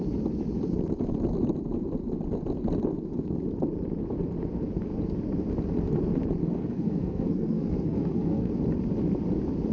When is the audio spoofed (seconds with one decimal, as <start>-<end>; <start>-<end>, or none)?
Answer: 6.4-8.5